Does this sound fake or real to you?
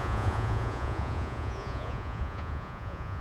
fake